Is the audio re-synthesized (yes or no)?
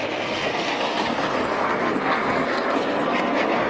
yes